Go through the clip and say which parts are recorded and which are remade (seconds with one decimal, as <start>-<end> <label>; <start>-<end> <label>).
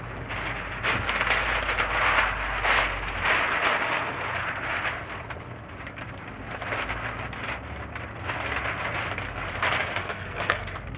0.0-10.0 recorded; 10.0-11.0 remade